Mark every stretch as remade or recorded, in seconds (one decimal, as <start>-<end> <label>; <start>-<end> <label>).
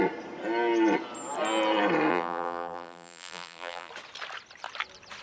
0.0-2.1 recorded; 2.1-3.9 remade; 3.9-5.2 recorded